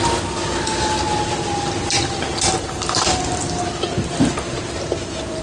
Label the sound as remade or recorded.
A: recorded